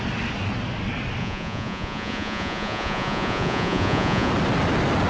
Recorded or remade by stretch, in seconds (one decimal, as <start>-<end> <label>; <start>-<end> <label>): 0.0-1.2 recorded; 1.2-4.3 remade; 4.3-5.1 recorded

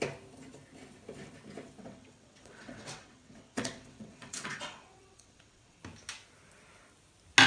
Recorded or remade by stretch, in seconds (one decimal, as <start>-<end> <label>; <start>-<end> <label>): 0.0-1.8 recorded; 1.8-5.8 remade; 5.8-7.5 recorded

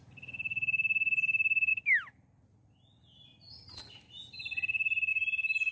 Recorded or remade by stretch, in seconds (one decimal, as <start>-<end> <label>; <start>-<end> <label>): 0.0-5.7 recorded

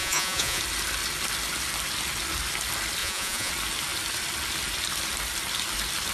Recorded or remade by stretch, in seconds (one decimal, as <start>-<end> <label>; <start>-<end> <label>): 0.0-0.6 remade; 0.6-3.0 recorded; 3.0-3.5 remade; 3.5-6.1 recorded

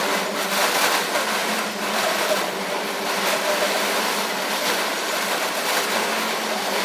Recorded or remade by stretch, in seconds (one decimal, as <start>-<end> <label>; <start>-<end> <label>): 0.0-6.8 recorded

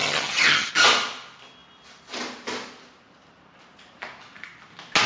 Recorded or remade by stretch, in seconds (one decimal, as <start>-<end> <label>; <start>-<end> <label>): 0.0-0.7 remade; 0.7-5.1 recorded

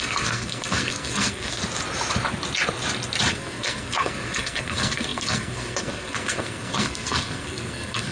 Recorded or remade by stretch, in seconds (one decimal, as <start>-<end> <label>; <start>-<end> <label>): 0.0-1.6 remade; 1.6-3.3 recorded; 3.3-8.1 remade

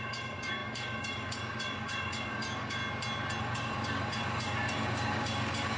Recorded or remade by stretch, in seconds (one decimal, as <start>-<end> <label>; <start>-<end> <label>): 0.0-2.8 remade; 2.8-3.4 recorded; 3.4-5.8 remade